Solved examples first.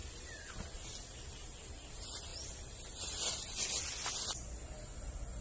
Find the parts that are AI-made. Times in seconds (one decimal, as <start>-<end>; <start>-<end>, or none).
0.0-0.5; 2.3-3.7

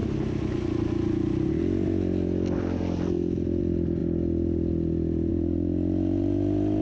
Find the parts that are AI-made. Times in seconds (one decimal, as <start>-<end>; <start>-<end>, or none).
none

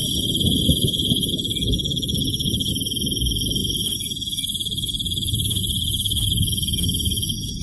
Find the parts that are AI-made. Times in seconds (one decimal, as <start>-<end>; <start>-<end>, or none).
0.0-1.3

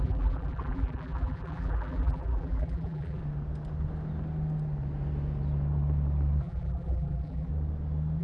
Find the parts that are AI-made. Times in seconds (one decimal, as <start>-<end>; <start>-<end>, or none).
0.0-3.2; 6.4-7.5